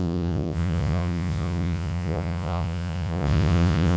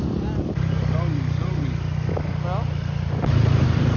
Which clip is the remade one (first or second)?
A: first